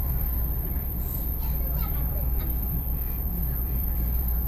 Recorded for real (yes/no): no